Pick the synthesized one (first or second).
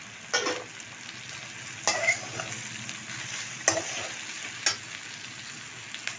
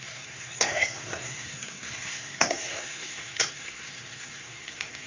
second